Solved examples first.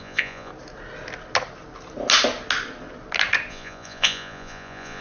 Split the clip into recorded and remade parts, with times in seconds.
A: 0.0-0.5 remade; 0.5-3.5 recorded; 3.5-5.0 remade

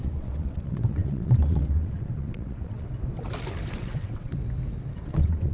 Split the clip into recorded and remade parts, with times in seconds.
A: 0.0-2.9 remade; 2.9-3.7 recorded; 3.7-4.3 remade; 4.3-5.0 recorded; 5.0-5.5 remade

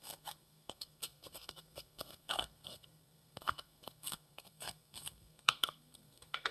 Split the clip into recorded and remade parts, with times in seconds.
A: 0.0-6.5 remade

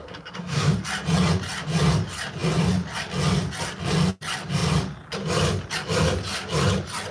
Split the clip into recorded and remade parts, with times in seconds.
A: 0.0-0.7 remade; 0.7-7.1 recorded